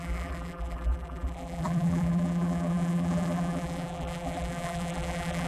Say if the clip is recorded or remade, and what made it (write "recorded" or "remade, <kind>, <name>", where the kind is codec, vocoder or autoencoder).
remade, vocoder, BigVGAN v2